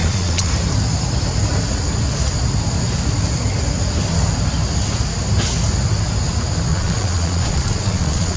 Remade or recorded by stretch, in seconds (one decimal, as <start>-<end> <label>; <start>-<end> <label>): 0.0-0.5 remade; 0.5-6.7 recorded; 6.7-8.4 remade